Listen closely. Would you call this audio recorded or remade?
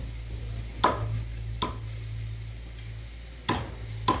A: recorded